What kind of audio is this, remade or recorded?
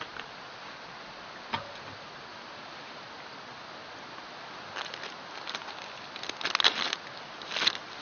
recorded